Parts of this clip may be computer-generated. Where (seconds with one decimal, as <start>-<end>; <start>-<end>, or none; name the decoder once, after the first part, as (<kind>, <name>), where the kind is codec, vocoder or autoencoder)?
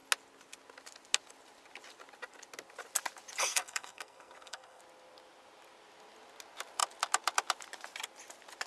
3.4-4.8 (codec, SNAC)